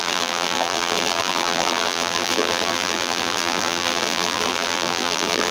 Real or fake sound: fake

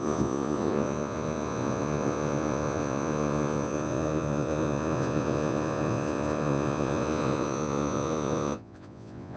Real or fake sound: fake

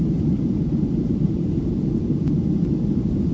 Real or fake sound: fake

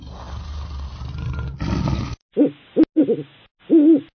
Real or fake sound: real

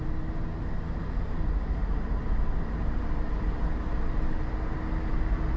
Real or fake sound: real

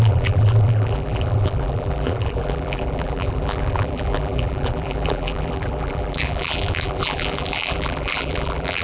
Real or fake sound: fake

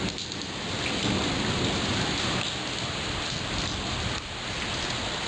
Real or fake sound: real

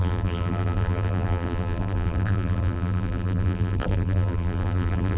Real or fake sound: fake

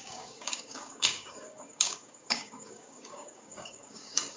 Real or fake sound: fake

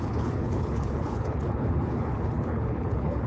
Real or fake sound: fake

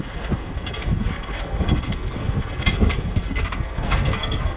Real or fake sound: fake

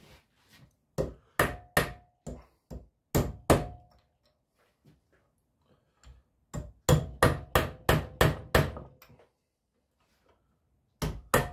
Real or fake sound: real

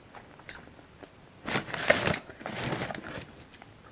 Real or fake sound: real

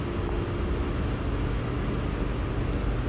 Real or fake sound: real